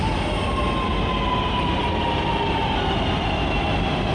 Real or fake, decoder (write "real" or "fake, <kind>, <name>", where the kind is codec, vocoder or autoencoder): real